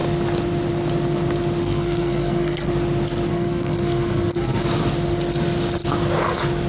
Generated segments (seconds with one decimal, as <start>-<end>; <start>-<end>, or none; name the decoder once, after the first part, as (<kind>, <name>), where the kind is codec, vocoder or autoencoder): 1.6-2.7 (codec, SNAC); 3.3-4.6